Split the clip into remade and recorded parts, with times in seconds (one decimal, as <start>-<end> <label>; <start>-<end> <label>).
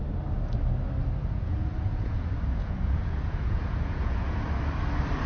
0.0-1.2 recorded; 1.2-4.4 remade; 4.4-5.3 recorded